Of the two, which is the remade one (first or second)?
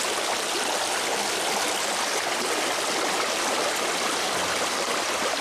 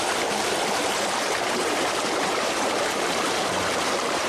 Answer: second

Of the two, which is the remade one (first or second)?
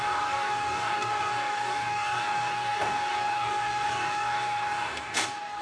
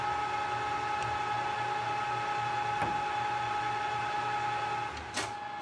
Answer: first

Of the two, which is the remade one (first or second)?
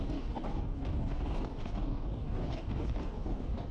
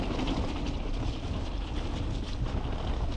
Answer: first